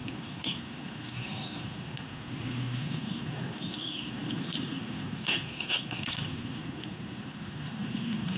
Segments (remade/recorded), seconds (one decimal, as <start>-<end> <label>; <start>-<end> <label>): 0.0-8.4 remade